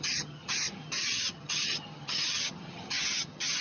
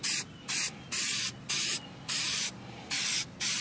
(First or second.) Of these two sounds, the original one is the second